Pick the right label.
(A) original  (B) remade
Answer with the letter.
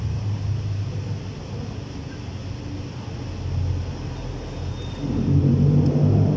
A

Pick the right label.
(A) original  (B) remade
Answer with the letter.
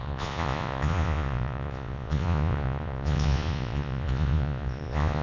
B